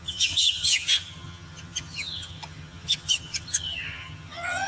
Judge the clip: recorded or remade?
remade